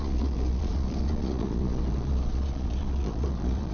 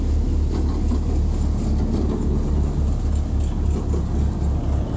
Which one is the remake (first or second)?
first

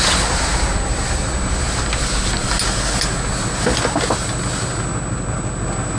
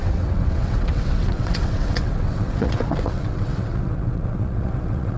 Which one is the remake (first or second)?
second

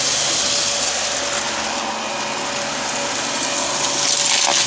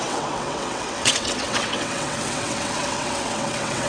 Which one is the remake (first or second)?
second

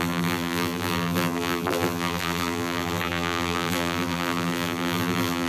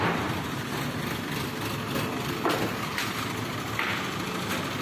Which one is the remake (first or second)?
first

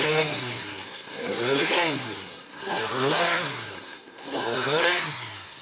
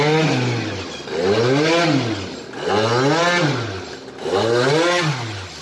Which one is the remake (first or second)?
first